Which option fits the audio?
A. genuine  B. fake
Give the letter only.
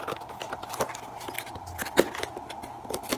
A